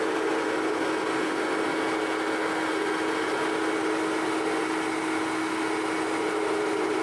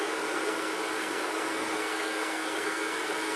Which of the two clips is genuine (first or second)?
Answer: first